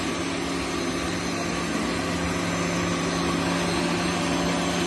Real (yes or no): yes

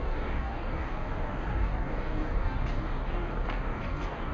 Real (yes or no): no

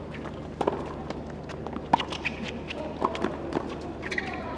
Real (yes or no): yes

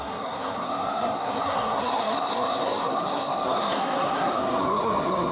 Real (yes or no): no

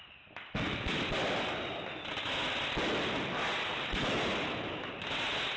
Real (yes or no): yes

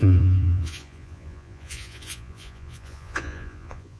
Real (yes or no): no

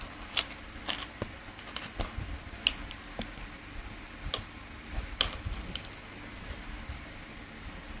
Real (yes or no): yes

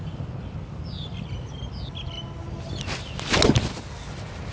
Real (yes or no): yes